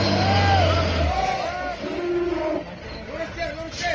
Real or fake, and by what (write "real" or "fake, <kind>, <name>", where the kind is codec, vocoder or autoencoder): real